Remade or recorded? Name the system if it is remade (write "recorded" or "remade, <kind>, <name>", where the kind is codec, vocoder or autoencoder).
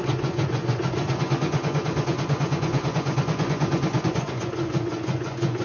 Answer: remade, vocoder, Vocos